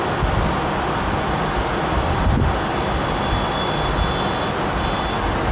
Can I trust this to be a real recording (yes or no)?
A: yes